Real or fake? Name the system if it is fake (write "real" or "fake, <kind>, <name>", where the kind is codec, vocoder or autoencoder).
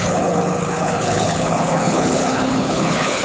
fake, codec, HILCodec